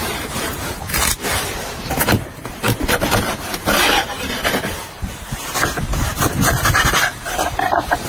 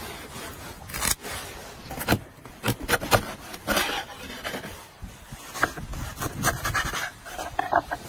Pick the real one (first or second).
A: second